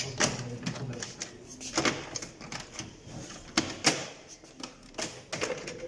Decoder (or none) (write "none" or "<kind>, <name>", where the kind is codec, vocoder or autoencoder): none